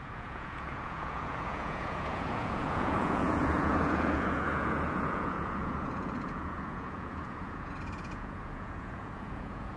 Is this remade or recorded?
remade